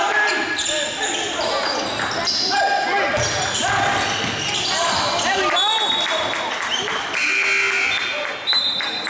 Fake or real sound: real